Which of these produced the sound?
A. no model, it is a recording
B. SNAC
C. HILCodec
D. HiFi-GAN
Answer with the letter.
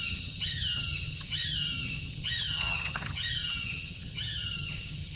D